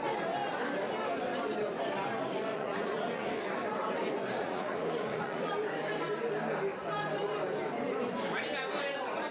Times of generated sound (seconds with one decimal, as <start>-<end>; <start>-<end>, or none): 2.5-3.4; 4.4-5.5